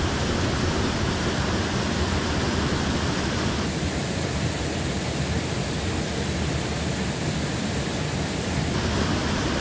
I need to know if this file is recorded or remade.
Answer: recorded